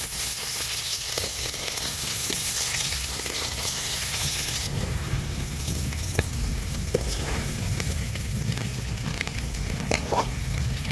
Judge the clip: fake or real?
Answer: fake